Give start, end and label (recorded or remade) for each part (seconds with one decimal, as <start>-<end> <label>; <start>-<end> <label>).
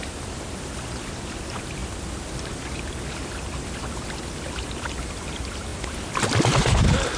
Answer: 0.0-7.2 recorded